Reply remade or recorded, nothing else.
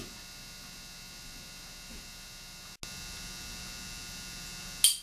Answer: recorded